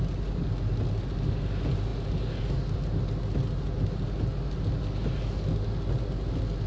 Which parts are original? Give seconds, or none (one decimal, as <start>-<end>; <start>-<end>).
0.0-6.7